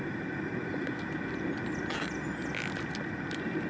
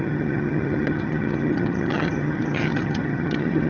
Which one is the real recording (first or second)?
first